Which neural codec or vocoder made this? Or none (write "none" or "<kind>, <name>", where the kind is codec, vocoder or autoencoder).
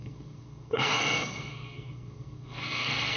codec, SNAC